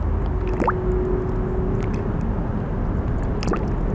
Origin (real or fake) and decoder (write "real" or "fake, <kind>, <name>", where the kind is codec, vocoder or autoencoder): real